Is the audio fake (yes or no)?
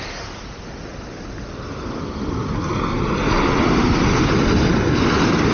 no